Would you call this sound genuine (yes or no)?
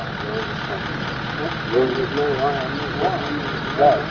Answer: yes